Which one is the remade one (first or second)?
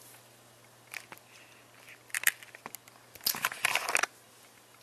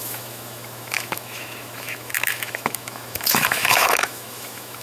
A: second